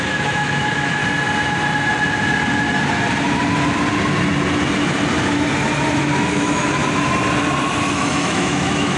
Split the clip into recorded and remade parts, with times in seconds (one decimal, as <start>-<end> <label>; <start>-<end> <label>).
0.0-1.0 remade; 1.0-6.0 recorded; 6.0-6.8 remade; 6.8-7.9 recorded; 7.9-9.0 remade